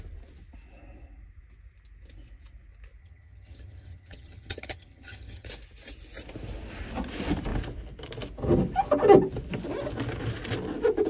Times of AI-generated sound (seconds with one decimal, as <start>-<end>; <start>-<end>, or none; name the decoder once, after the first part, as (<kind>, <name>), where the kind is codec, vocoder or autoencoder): 3.0-5.5 (vocoder, HiFi-GAN)